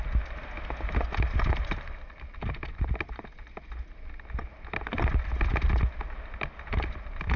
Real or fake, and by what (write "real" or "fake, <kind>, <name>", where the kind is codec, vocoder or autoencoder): real